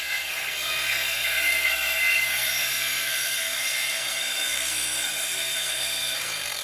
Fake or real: fake